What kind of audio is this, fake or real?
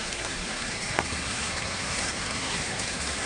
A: fake